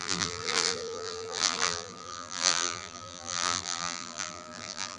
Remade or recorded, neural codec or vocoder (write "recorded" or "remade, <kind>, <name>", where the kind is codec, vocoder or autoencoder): remade, vocoder, BigVGAN v2